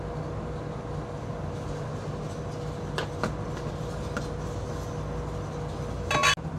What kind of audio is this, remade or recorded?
recorded